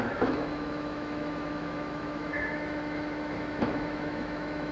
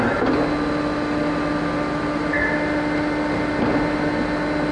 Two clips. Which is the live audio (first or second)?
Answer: second